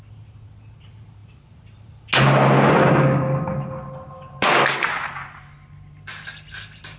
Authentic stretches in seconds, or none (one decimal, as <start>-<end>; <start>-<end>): 0.0-7.0